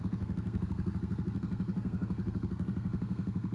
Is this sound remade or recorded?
remade